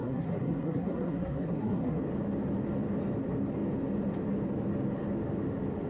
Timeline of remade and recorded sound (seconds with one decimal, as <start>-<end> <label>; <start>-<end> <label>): 0.0-2.0 remade; 2.0-5.9 recorded